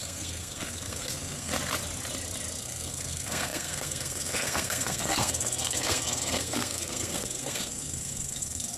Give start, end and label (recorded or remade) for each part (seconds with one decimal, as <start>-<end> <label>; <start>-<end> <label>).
0.0-1.5 remade; 1.5-2.6 recorded; 2.6-8.8 remade